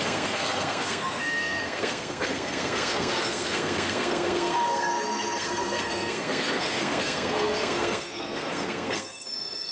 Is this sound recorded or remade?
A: remade